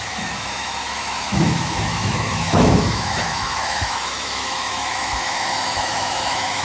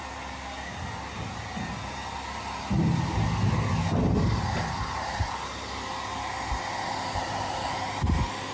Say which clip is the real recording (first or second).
second